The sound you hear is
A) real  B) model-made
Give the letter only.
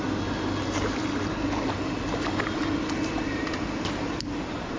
A